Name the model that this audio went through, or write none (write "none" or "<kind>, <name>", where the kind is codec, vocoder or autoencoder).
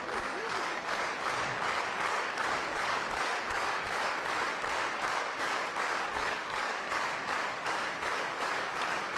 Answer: codec, DAC